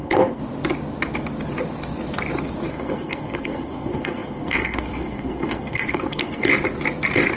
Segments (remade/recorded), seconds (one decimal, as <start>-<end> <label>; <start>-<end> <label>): 0.0-0.4 remade; 0.4-2.7 recorded; 2.7-6.5 remade; 6.5-7.4 recorded